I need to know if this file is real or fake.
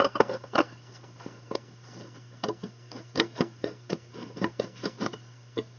fake